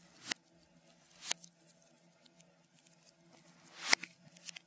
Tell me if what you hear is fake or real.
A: real